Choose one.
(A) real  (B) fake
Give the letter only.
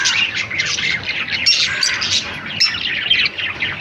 A